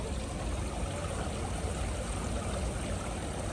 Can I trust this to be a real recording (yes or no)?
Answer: yes